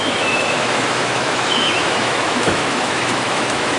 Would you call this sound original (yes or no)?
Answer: no